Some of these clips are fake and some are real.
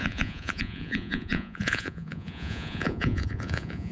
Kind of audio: fake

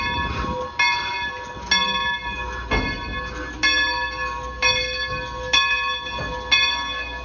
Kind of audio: real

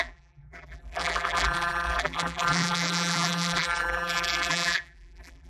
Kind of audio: fake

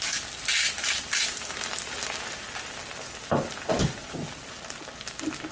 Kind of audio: real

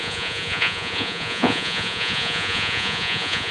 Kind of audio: fake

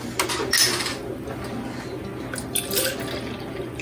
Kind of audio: real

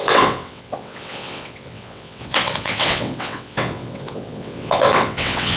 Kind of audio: fake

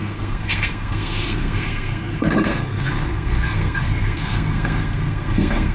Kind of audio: fake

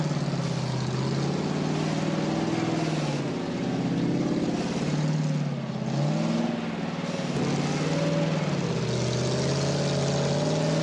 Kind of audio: real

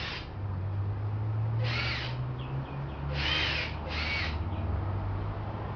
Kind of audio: real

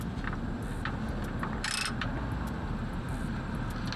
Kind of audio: real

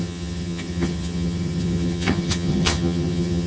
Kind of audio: fake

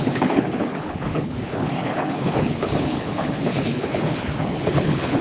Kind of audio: fake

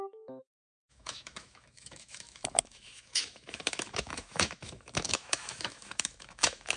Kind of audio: fake